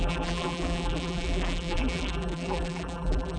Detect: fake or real fake